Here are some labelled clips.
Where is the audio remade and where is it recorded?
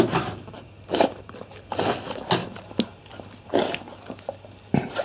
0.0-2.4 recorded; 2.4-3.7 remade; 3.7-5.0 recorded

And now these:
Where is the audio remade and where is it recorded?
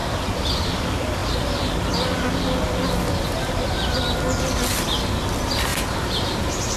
0.0-5.7 recorded; 5.7-6.8 remade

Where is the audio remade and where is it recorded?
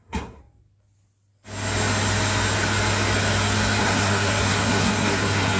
0.0-0.4 remade; 0.4-3.8 recorded; 3.8-5.6 remade